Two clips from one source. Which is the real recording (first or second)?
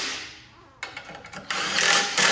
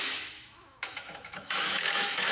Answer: first